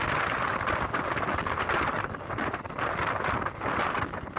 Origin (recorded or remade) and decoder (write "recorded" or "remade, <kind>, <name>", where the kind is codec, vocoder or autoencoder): recorded